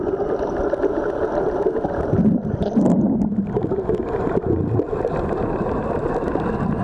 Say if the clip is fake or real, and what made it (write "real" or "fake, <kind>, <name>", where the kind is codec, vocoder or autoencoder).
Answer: real